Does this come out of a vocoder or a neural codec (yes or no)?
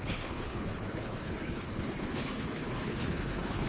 yes